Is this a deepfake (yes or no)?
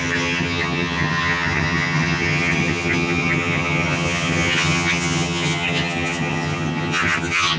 yes